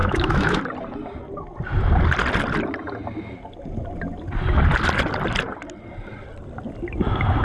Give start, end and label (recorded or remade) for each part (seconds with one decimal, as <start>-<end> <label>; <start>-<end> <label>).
0.0-0.6 remade; 0.6-7.4 recorded